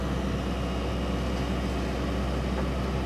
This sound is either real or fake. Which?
real